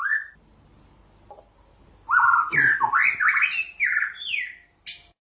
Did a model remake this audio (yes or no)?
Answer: no